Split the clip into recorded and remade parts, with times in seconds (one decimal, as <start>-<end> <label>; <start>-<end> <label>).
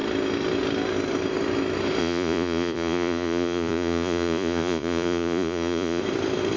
0.0-2.0 recorded; 2.0-6.0 remade; 6.0-6.6 recorded